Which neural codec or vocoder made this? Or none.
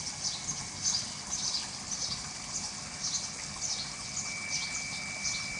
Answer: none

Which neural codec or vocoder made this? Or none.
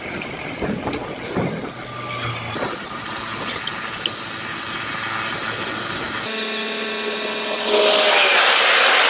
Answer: none